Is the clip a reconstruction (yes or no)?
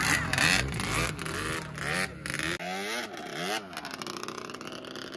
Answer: no